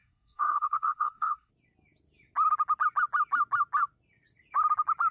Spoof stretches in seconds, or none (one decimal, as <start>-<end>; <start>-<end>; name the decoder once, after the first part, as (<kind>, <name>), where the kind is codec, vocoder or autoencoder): 0.0-1.5 (codec, SNAC)